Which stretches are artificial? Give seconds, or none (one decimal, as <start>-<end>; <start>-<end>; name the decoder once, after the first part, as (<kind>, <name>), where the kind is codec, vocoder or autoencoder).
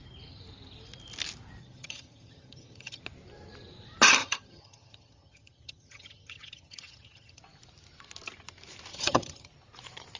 1.6-3.0 (vocoder, HiFi-GAN); 4.2-7.4; 8.9-9.5